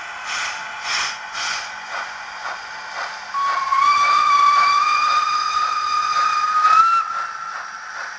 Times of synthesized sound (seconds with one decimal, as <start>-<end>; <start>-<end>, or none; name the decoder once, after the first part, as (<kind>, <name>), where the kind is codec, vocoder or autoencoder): 0.6-2.7 (vocoder, Vocos); 3.7-6.2